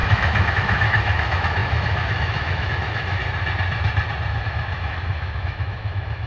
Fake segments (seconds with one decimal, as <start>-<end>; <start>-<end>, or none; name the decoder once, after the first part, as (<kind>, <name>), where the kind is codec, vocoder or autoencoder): 0.0-3.2 (autoencoder, DAC-VAE); 4.4-6.3